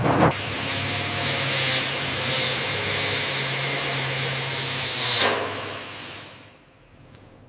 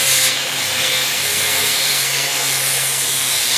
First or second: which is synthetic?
second